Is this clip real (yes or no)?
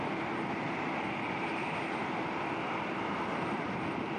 yes